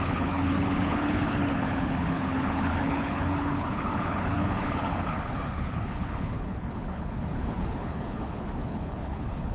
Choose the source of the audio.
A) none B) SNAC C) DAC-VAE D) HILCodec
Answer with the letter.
D